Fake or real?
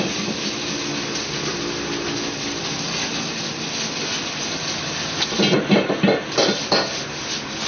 real